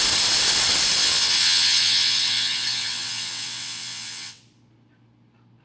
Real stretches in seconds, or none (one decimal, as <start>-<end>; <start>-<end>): 0.0-1.0; 4.4-5.6